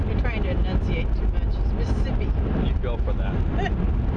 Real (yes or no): yes